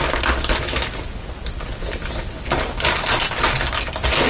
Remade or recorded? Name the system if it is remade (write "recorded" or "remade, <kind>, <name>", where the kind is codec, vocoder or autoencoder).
recorded